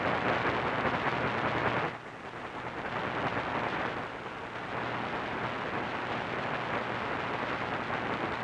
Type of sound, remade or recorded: recorded